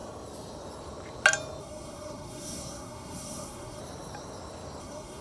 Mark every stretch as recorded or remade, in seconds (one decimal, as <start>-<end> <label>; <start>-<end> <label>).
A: 0.0-1.6 recorded; 1.6-3.8 remade; 3.8-4.8 recorded; 4.8-5.2 remade

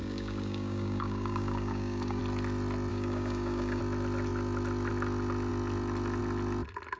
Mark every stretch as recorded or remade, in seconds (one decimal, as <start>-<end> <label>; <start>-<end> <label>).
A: 0.0-2.2 remade; 2.2-2.9 recorded; 2.9-3.8 remade; 3.8-7.0 recorded